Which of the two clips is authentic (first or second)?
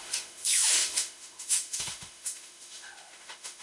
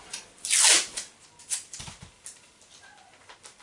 second